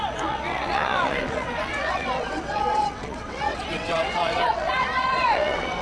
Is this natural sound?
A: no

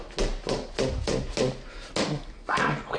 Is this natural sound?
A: yes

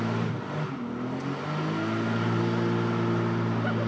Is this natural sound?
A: yes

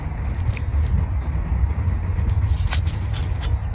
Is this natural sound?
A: yes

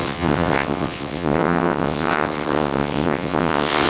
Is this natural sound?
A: no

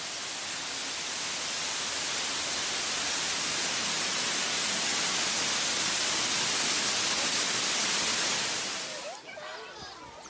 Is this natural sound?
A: yes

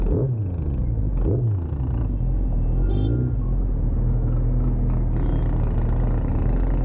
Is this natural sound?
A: yes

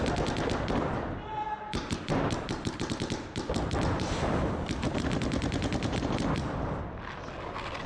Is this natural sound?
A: yes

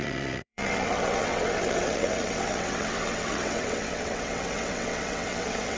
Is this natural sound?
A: no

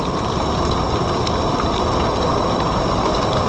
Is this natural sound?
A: yes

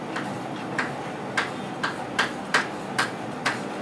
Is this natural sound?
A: yes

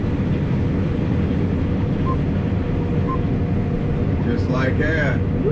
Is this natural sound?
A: yes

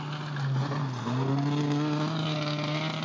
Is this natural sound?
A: yes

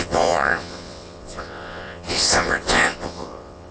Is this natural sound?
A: no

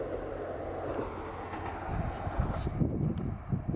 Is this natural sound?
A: yes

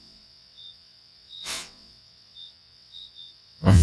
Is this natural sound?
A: no